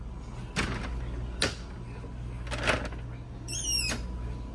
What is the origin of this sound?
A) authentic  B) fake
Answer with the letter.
A